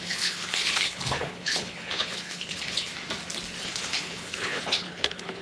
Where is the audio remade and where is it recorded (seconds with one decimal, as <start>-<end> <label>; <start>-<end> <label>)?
0.0-2.9 remade; 2.9-3.6 recorded; 3.6-5.4 remade